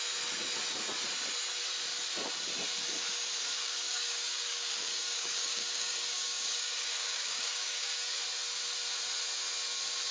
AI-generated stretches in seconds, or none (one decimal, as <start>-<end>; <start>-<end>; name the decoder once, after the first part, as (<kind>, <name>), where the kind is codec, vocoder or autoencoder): 3.5-8.2 (codec, DAC)